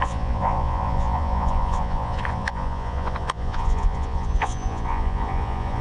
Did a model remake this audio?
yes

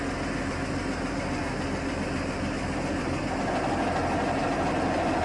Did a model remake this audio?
no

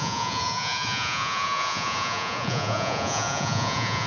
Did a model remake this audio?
yes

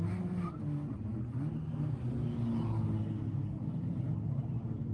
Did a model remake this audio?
no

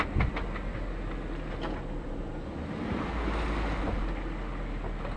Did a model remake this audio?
no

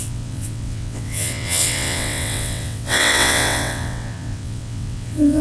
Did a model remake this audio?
yes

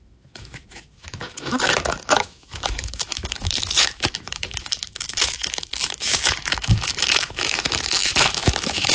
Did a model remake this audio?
yes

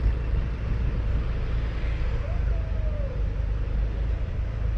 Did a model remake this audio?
no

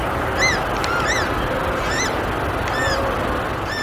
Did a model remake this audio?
no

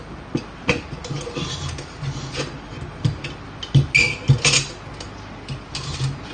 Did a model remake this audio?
no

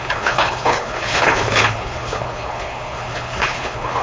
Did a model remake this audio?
yes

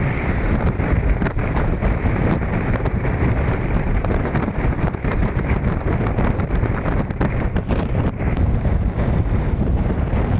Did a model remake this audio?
yes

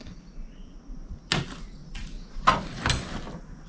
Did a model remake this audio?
no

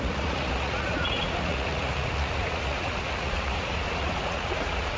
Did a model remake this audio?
yes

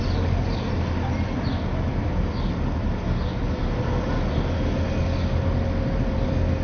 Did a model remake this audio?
no